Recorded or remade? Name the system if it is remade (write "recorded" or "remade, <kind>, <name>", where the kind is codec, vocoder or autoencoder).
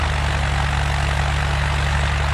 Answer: recorded